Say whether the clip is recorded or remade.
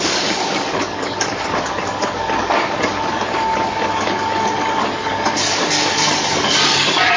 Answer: remade